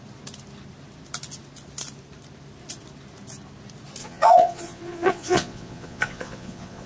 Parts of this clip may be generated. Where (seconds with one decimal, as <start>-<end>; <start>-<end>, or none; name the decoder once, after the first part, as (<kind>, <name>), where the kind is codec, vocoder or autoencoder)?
4.0-6.9 (vocoder, Vocos)